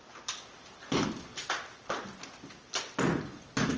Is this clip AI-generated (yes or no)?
no